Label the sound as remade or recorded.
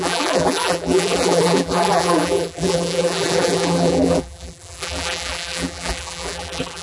remade